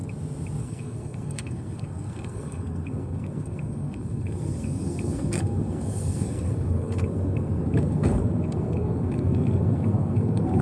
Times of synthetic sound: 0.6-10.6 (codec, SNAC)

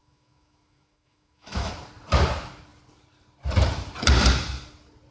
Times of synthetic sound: 0.0-1.7 (autoencoder, DAC-VAE)

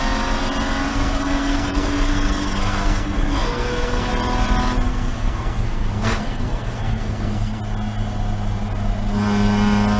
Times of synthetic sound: 0.9-4.1 (codec, SNAC); 4.9-7.6